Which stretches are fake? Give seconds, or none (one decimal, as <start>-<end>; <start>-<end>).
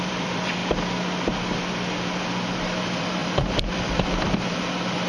0.0-0.6; 2.8-5.1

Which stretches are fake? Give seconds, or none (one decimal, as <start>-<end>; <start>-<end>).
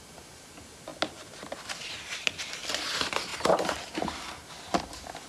0.0-0.9; 1.9-5.3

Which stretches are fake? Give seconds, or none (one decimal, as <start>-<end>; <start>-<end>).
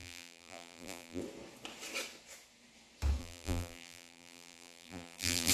0.0-1.2; 3.2-5.5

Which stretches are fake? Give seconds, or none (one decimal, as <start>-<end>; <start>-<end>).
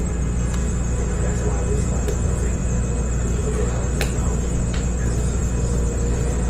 0.6-1.1; 5.4-6.5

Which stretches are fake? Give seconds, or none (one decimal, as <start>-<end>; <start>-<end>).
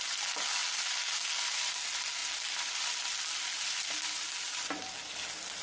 none